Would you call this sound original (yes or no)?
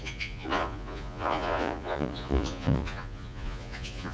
no